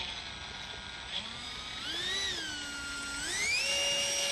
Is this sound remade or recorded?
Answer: recorded